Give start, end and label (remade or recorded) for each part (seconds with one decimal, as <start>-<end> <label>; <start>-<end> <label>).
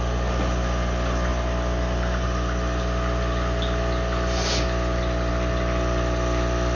0.0-6.7 recorded